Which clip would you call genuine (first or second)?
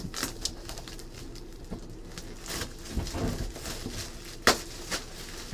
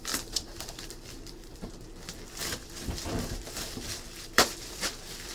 first